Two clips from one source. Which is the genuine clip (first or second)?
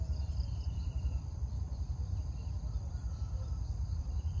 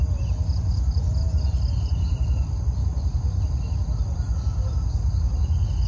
second